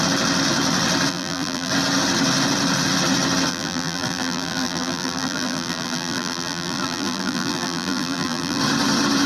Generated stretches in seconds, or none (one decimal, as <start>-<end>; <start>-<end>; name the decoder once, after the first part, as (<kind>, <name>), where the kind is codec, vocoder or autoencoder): 1.1-1.7 (vocoder, BigVGAN v2); 3.5-8.6